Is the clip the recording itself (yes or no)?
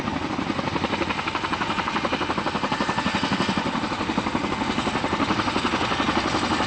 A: yes